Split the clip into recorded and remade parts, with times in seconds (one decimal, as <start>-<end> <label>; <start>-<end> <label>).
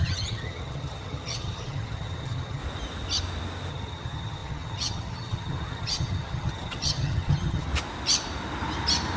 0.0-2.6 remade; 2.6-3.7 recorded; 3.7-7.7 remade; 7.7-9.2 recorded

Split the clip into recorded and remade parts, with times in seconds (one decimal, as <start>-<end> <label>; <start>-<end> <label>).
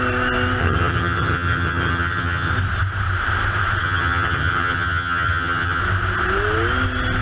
0.0-0.6 recorded; 0.6-2.5 remade; 2.5-3.8 recorded; 3.8-5.8 remade; 5.8-7.2 recorded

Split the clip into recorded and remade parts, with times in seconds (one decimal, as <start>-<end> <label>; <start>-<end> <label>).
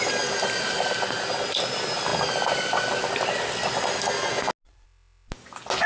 0.0-5.9 recorded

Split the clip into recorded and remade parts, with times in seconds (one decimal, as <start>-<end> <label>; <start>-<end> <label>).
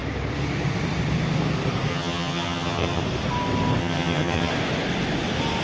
0.0-1.9 recorded; 1.9-3.0 remade; 3.0-3.8 recorded; 3.8-4.5 remade; 4.5-5.6 recorded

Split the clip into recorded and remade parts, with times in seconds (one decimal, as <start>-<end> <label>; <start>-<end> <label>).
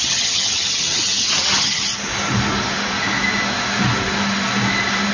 0.0-1.8 remade; 1.8-5.1 recorded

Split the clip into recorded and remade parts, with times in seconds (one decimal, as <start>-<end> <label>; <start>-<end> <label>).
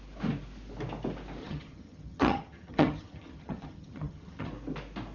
0.0-1.4 recorded; 1.4-4.5 remade; 4.5-5.1 recorded